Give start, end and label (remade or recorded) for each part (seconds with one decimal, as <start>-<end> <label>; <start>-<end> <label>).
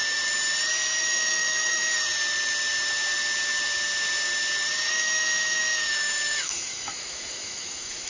0.0-1.0 recorded; 1.0-1.9 remade; 1.9-4.9 recorded; 4.9-8.1 remade